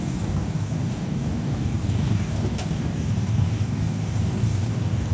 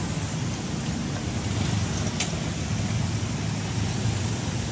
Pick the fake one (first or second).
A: first